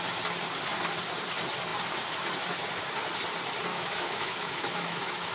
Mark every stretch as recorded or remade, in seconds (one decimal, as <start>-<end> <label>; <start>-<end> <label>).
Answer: 0.0-3.7 recorded; 3.7-5.3 remade

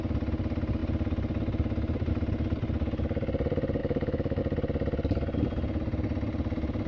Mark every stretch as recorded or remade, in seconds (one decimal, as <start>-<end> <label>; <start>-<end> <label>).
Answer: 0.0-3.8 recorded; 3.8-4.4 remade; 4.4-6.9 recorded

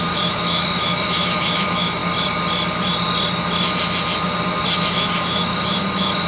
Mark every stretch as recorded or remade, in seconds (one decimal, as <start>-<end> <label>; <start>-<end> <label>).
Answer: 0.0-2.0 remade; 2.0-4.9 recorded; 4.9-6.3 remade